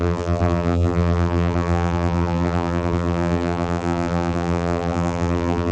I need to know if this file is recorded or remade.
remade